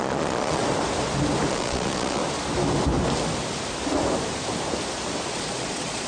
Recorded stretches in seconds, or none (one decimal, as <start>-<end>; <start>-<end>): 0.6-1.5; 2.2-5.3